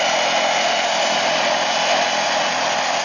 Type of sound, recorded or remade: recorded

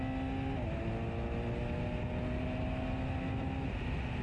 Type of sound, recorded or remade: recorded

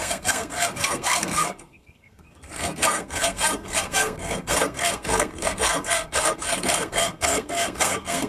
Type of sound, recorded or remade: remade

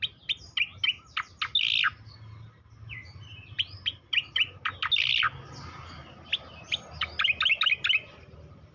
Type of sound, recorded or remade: recorded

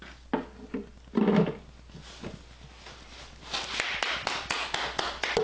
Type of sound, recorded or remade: recorded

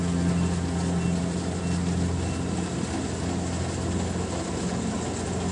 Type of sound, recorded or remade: recorded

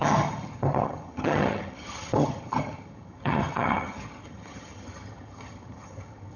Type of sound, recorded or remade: remade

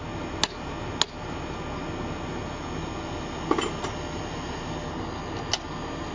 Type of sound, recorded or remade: recorded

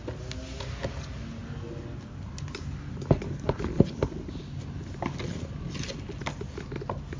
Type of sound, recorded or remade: recorded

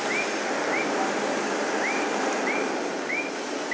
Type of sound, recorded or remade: recorded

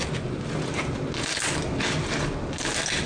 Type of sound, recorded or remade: recorded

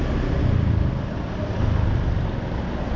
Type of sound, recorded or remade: recorded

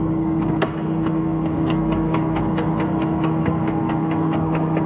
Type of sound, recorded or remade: remade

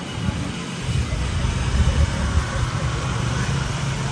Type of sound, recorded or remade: remade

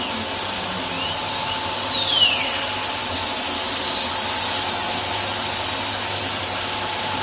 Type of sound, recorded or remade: recorded